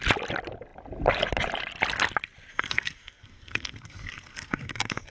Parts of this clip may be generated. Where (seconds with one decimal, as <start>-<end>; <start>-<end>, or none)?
2.5-5.1